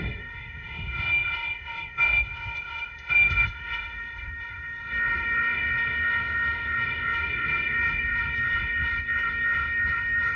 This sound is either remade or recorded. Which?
remade